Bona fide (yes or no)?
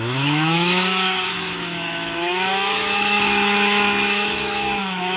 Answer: no